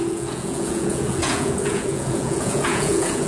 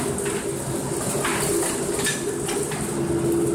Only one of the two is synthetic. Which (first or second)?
first